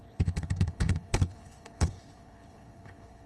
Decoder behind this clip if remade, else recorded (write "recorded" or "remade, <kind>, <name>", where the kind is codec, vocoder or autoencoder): remade, codec, HILCodec